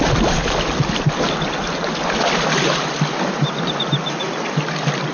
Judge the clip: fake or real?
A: real